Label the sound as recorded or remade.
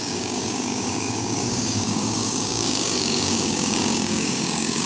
remade